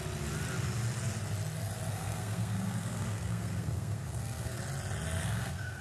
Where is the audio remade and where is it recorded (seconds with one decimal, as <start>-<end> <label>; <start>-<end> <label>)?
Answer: 0.0-1.9 recorded; 1.9-4.6 remade; 4.6-5.2 recorded; 5.2-5.8 remade